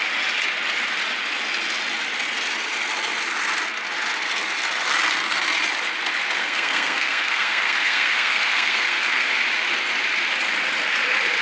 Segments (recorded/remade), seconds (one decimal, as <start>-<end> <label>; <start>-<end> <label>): 0.0-6.4 recorded; 6.4-9.3 remade; 9.3-11.4 recorded